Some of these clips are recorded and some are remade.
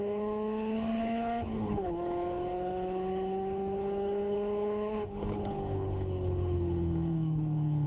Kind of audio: remade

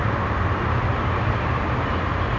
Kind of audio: remade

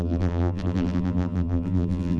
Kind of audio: remade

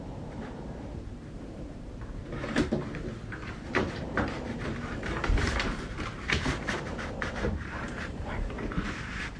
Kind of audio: remade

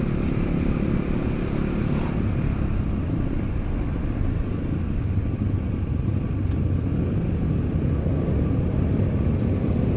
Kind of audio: recorded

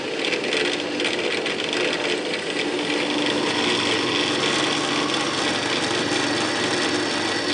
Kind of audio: recorded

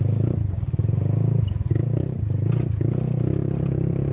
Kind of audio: recorded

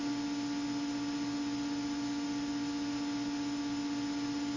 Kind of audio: recorded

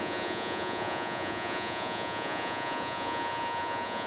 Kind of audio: remade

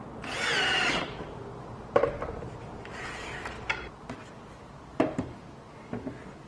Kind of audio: recorded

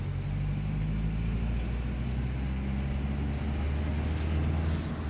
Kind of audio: recorded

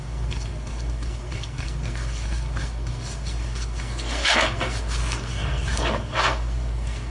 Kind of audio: remade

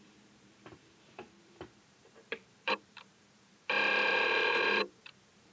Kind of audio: remade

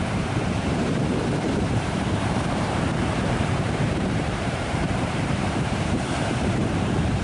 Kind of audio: remade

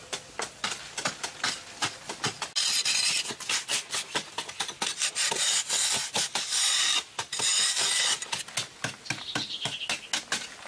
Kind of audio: recorded